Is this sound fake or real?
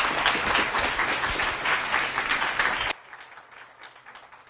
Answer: real